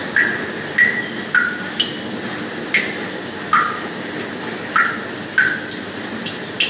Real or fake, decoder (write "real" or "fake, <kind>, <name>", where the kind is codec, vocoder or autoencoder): real